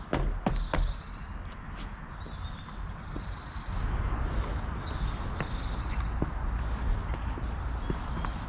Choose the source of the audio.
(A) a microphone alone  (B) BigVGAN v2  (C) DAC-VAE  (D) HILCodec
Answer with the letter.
A